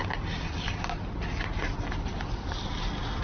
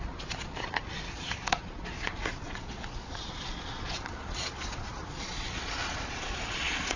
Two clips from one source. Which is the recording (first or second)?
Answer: first